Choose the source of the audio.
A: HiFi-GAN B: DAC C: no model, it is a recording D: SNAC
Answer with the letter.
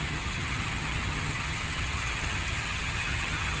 A